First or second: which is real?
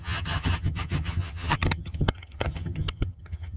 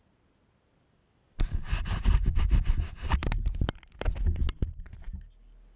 second